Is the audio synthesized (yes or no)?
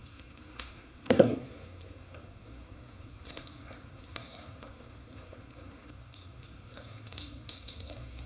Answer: yes